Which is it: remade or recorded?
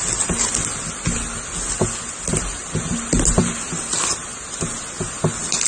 recorded